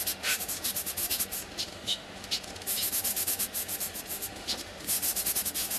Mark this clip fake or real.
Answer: fake